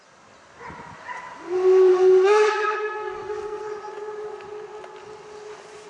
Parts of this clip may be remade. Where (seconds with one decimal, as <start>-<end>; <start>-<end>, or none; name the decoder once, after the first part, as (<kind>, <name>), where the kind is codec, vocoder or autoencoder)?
1.9-3.7 (codec, SNAC)